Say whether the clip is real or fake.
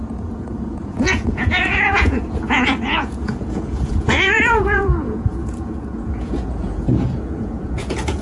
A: fake